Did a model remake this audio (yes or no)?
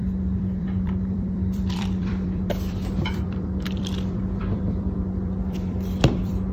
yes